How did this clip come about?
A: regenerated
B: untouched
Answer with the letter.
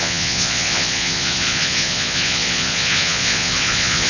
A